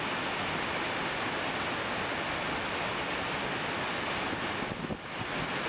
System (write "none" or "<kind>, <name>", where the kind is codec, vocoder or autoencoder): none